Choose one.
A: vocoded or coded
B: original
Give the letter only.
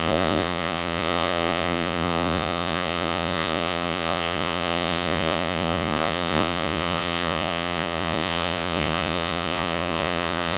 A